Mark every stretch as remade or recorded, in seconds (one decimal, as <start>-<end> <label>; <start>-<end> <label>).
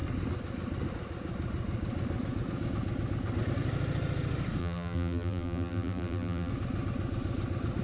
0.0-4.6 recorded; 4.6-6.5 remade; 6.5-7.8 recorded